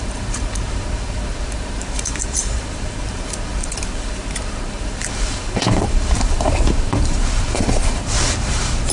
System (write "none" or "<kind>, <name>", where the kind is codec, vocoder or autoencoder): vocoder, BigVGAN v2